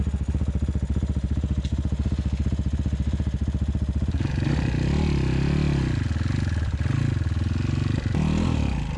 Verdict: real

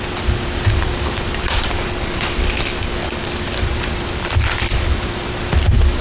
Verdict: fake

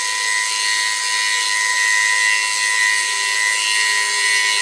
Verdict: real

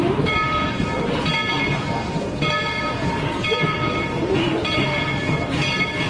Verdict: fake